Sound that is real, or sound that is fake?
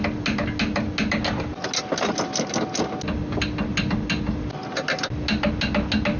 real